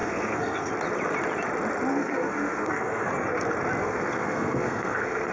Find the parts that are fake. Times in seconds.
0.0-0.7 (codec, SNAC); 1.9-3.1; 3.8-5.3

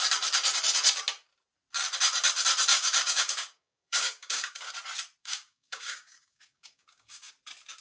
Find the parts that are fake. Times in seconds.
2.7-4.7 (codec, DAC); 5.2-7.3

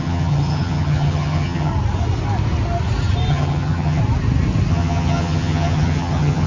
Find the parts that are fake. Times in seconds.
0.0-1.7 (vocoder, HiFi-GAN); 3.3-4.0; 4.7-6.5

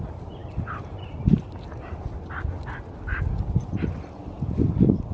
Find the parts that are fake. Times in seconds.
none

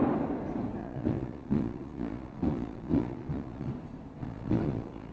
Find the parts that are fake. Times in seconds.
0.8-3.7 (vocoder, Vocos); 4.2-5.1